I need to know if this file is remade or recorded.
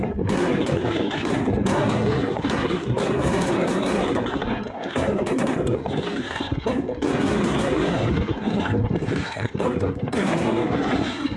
remade